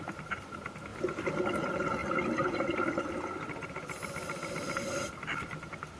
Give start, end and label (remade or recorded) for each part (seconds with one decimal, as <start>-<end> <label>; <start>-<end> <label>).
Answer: 0.0-6.0 recorded